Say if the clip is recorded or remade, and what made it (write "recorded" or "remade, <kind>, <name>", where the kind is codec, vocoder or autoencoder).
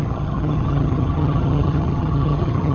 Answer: remade, vocoder, HiFi-GAN